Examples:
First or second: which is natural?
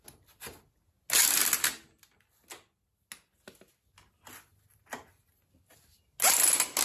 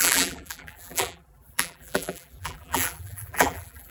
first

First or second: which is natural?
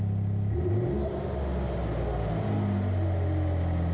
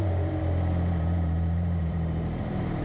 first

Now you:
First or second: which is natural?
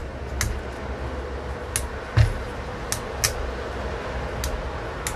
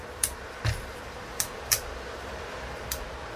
first